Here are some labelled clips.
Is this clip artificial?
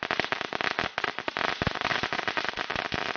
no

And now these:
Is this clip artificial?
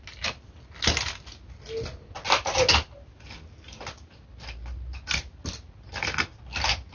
no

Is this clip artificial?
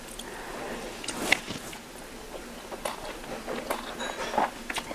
no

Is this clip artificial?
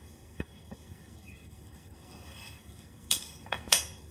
yes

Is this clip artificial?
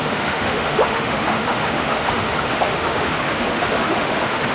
yes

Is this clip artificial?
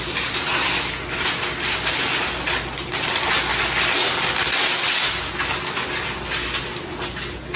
no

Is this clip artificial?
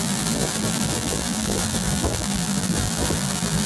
yes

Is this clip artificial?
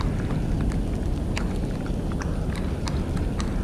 no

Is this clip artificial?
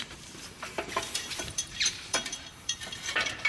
yes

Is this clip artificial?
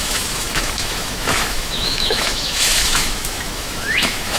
yes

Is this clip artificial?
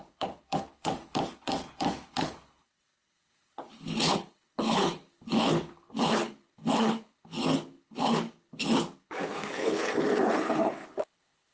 yes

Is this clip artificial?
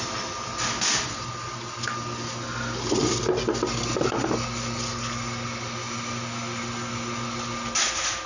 no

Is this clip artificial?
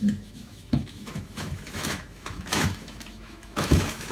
yes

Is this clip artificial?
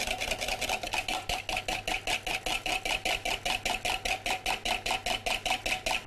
no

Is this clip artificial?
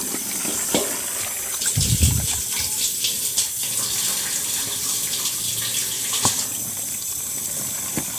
no